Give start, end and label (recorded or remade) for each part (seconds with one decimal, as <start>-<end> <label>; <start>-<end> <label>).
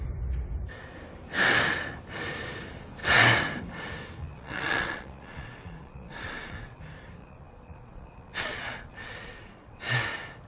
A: 0.0-4.2 recorded; 4.2-6.8 remade; 6.8-7.2 recorded; 7.2-9.8 remade; 9.8-10.5 recorded